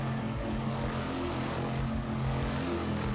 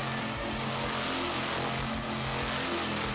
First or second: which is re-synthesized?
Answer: first